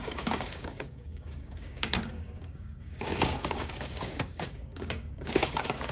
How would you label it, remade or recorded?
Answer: remade